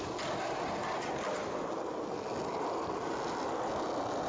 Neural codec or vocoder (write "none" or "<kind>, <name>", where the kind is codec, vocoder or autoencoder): none